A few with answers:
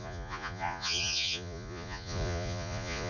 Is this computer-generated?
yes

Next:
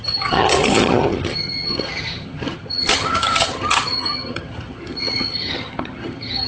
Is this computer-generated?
yes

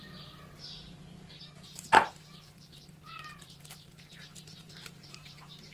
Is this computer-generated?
yes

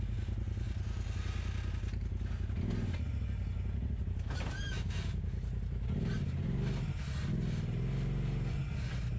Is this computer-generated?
no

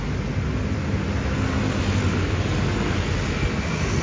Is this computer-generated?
no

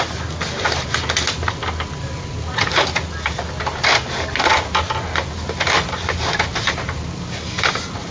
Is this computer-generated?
no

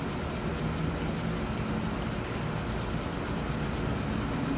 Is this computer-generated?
no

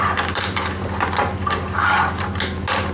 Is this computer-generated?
no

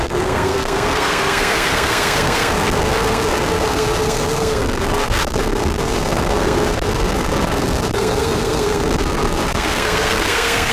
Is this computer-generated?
yes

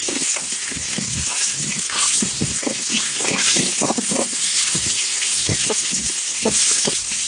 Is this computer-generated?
yes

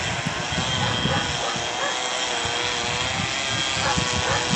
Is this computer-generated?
no